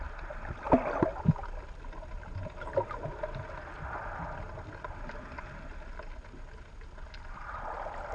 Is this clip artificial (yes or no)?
no